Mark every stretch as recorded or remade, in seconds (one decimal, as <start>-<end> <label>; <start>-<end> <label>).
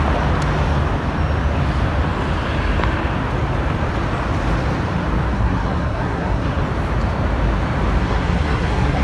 0.0-5.3 recorded; 5.3-6.6 remade; 6.6-8.0 recorded; 8.0-9.0 remade